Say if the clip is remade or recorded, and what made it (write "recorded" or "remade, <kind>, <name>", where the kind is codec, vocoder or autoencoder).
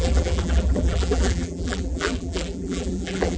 remade, vocoder, BigVGAN v2